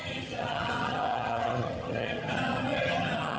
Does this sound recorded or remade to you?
remade